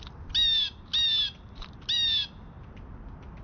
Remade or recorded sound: recorded